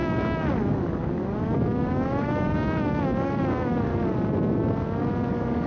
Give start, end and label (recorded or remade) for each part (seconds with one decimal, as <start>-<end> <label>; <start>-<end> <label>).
0.0-3.9 remade; 3.9-5.3 recorded; 5.3-5.7 remade